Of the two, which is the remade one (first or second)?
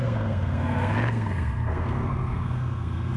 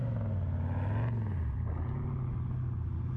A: first